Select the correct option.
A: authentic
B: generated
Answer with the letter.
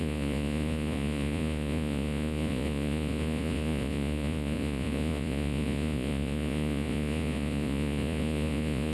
B